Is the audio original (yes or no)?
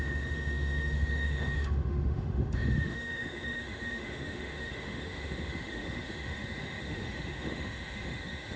no